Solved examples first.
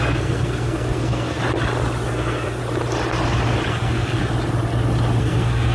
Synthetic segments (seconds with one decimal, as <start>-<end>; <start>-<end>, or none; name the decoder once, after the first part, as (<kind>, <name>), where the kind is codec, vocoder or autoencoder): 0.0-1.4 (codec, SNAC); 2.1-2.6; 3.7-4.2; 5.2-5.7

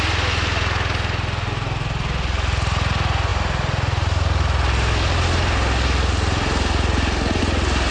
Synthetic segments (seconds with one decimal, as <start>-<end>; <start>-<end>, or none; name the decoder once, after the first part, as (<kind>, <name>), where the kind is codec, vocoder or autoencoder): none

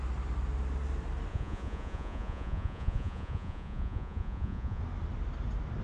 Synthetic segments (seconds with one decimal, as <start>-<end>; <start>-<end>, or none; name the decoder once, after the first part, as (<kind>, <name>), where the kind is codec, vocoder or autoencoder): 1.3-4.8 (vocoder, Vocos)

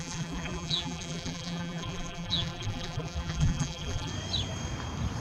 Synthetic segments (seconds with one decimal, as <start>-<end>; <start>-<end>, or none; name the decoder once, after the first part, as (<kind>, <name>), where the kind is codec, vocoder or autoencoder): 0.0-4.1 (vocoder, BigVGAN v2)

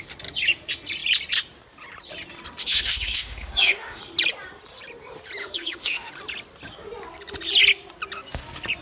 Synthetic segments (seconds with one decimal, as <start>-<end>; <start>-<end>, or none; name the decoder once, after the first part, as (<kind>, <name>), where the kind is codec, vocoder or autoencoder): 2.6-4.0 (autoencoder, DAC-VAE); 5.4-6.1

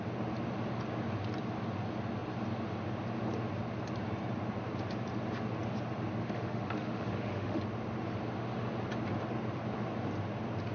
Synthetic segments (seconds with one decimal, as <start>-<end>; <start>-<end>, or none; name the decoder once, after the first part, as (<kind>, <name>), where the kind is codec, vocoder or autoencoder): 6.2-7.6 (autoencoder, DAC-VAE)

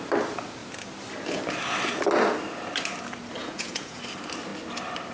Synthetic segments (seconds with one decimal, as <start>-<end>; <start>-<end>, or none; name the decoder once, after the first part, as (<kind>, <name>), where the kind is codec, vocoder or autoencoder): 3.4-4.0 (vocoder, Vocos)